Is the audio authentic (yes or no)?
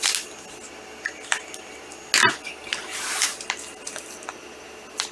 yes